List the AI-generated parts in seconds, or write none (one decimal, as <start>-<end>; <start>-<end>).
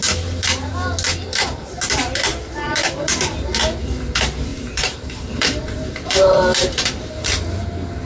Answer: 2.3-3.0; 4.5-7.6